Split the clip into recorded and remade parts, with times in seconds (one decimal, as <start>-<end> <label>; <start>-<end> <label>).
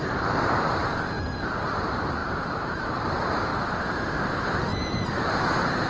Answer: 0.0-0.8 remade; 0.8-1.6 recorded; 1.6-3.5 remade; 3.5-4.6 recorded; 4.6-5.9 remade